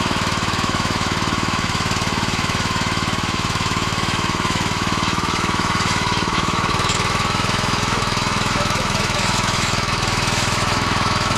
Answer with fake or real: fake